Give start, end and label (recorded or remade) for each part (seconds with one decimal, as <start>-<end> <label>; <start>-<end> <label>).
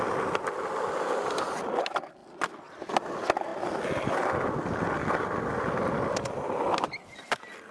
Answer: 0.0-7.7 recorded